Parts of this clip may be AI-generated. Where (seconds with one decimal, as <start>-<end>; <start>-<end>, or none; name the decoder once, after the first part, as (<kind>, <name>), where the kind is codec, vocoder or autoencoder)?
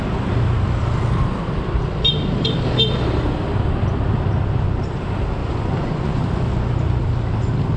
5.4-6.2 (vocoder, Vocos)